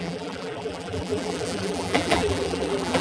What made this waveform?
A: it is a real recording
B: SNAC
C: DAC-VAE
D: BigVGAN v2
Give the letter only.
D